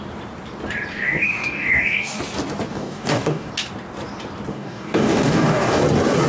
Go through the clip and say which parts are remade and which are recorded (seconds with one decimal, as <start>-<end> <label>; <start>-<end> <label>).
0.0-0.9 recorded; 0.9-2.2 remade; 2.2-2.7 recorded; 2.7-3.5 remade; 3.5-4.5 recorded; 4.5-5.8 remade; 5.8-6.3 recorded